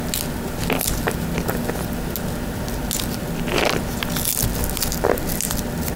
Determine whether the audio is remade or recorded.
recorded